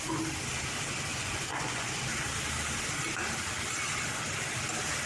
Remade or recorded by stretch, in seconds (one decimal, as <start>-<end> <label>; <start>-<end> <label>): 0.0-1.1 recorded; 1.1-2.0 remade; 2.0-5.1 recorded